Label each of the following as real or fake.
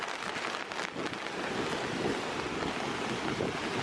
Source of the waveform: real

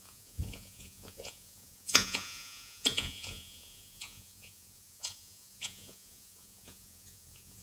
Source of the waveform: fake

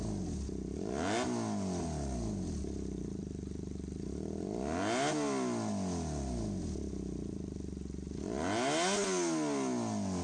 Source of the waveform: real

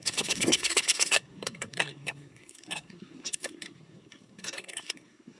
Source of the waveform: fake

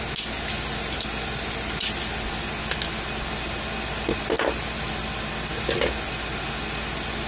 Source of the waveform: real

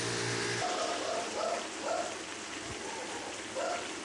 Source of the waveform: real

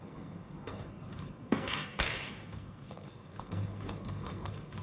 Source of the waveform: fake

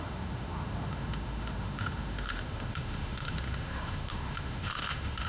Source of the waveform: fake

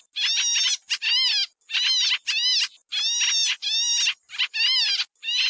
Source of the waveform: real